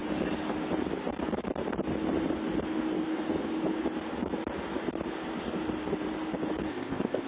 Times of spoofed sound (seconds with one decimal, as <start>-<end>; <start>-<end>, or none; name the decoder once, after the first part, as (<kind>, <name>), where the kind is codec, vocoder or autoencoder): 6.7-7.3 (codec, ZipCodec)